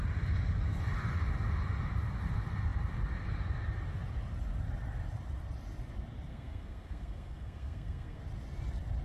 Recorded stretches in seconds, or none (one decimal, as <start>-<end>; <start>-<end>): 0.0-6.3; 8.2-9.0